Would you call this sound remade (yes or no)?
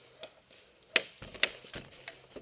no